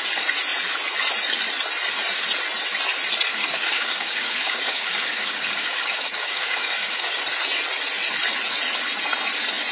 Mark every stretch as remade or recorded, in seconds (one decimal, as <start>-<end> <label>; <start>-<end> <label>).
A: 0.0-3.3 recorded; 3.3-7.2 remade; 7.2-9.7 recorded